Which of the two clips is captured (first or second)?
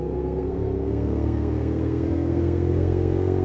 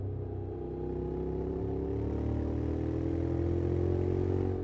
second